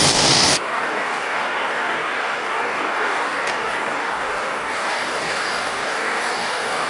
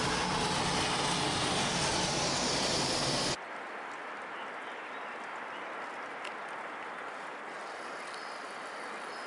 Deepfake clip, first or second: first